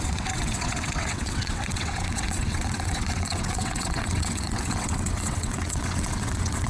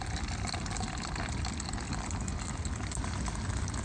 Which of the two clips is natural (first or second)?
second